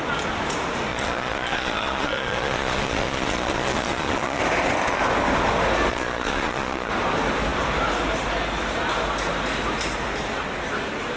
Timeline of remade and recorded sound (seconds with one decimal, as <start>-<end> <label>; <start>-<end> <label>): 0.0-0.9 recorded; 0.9-4.4 remade; 4.4-5.9 recorded; 5.9-6.9 remade; 6.9-11.2 recorded